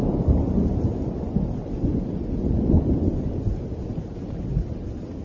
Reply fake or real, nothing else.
real